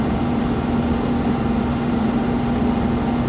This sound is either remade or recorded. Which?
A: recorded